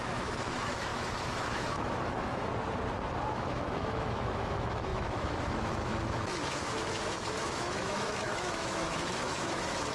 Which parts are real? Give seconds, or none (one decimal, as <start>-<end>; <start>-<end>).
2.5-3.2